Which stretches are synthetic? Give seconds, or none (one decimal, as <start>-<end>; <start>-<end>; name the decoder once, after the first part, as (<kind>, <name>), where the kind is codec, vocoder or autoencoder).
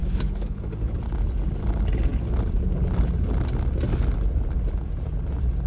0.0-0.8 (codec, DAC)